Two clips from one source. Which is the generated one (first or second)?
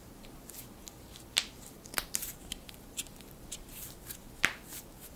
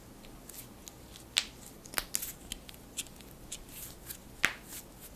first